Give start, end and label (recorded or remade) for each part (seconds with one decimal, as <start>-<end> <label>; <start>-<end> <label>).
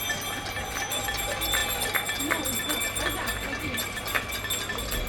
0.0-5.1 recorded